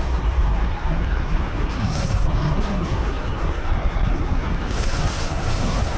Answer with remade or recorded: remade